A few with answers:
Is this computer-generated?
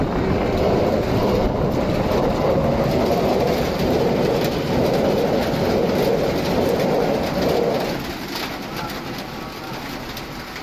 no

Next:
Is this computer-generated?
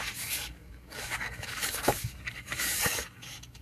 yes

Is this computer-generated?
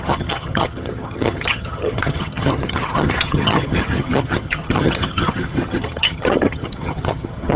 yes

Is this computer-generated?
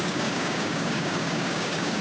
yes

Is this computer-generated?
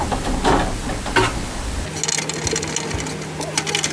no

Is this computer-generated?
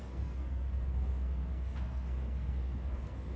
yes